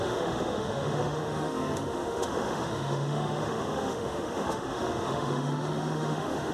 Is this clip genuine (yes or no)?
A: no